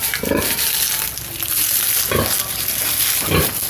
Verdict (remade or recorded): recorded